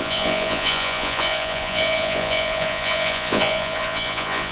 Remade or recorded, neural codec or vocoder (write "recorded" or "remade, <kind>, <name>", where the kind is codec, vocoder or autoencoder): remade, vocoder, Vocos